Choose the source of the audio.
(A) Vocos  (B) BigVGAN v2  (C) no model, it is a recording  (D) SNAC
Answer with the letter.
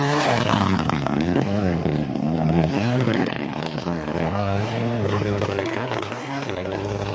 D